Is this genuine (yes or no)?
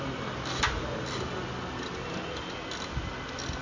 yes